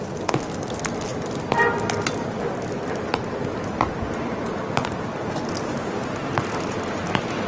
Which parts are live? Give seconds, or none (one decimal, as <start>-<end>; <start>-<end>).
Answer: 0.0-7.5